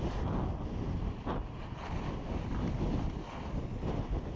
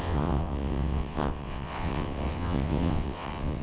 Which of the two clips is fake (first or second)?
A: second